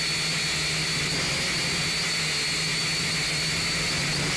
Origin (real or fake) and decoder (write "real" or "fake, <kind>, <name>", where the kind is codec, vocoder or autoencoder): real